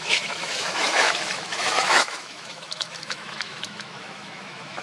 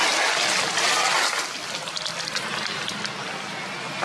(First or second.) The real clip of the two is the second